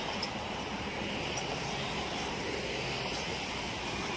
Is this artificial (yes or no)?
no